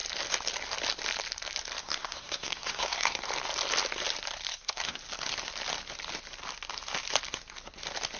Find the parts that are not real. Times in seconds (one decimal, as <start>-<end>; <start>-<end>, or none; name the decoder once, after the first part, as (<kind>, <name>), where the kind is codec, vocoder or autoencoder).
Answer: 1.8-3.2 (codec, SNAC); 4.5-5.0